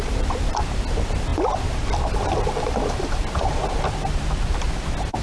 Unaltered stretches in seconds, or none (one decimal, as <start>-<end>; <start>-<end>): 0.0-5.2